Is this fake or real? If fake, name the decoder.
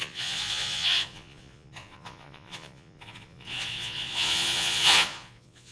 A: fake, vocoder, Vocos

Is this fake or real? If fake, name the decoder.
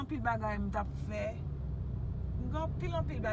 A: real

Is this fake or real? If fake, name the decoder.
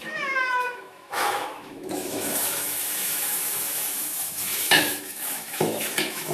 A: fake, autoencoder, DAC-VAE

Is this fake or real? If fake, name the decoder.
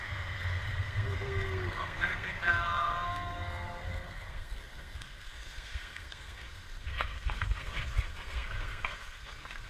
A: fake, codec, SNAC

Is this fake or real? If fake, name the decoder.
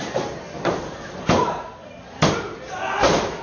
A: real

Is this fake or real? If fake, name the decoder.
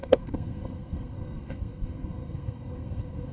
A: fake, codec, SNAC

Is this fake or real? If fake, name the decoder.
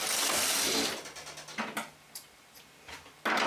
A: real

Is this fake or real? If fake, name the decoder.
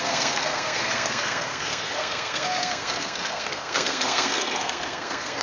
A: fake, codec, SNAC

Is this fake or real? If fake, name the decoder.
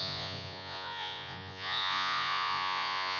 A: fake, vocoder, Vocos